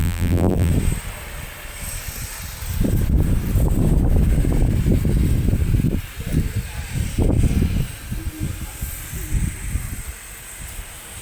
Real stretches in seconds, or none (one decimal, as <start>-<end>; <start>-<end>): 0.7-11.2